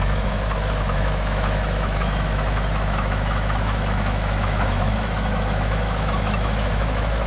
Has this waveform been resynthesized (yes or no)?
yes